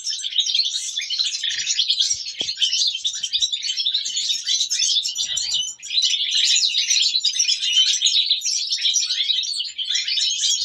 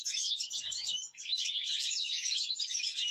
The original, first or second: first